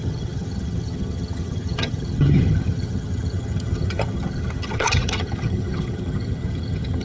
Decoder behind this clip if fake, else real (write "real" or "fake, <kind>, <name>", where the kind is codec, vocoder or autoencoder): fake, vocoder, HiFi-GAN